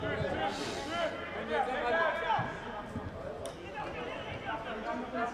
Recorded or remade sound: recorded